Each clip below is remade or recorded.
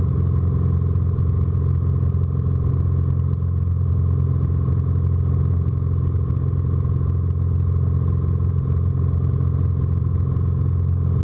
recorded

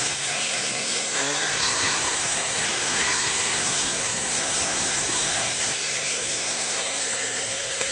remade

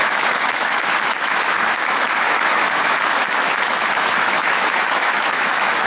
remade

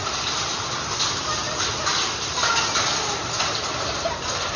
recorded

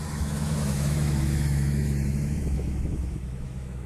remade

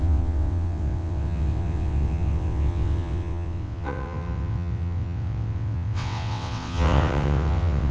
remade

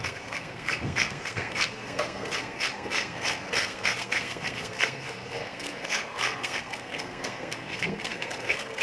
remade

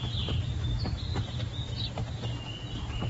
recorded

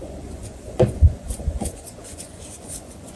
remade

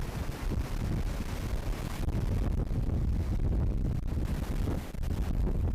recorded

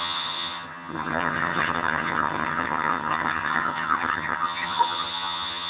remade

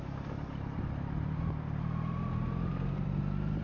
remade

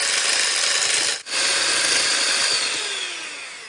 recorded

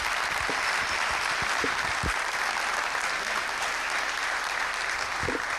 recorded